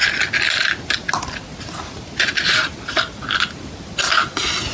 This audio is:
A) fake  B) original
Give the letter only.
B